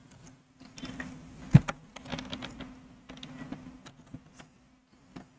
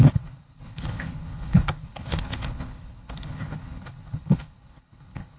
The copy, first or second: second